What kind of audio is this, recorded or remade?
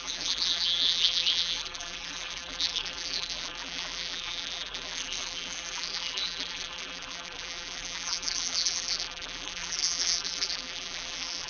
remade